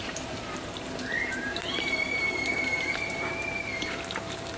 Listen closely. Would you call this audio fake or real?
fake